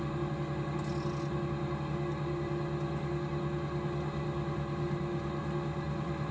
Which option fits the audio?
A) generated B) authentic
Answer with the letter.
B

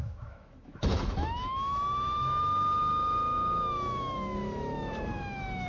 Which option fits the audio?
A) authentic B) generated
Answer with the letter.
B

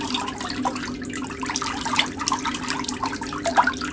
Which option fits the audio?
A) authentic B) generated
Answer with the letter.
A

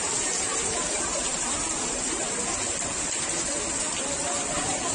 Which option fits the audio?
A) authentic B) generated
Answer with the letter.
A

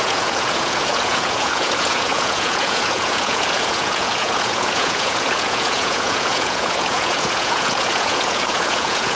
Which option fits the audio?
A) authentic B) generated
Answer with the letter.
B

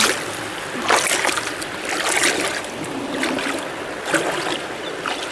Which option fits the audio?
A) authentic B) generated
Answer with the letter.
A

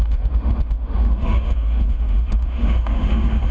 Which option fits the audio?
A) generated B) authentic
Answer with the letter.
A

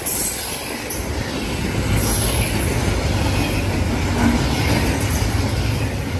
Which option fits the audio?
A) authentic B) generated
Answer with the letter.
A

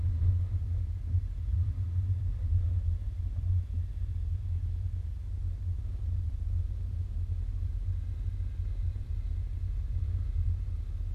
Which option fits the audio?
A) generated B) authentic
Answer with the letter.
B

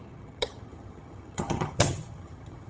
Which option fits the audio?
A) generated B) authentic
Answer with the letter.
A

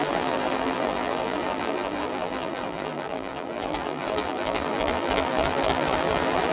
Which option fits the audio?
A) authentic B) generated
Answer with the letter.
B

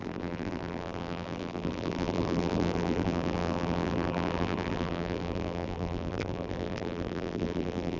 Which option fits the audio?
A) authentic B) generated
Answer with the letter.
B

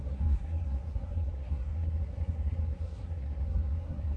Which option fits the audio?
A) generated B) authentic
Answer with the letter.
A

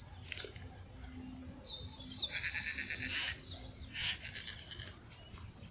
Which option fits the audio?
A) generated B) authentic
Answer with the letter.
B